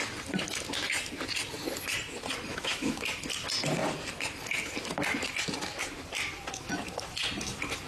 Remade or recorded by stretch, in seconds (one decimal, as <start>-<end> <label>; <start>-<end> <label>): 0.0-2.5 recorded; 2.5-3.0 remade; 3.0-7.9 recorded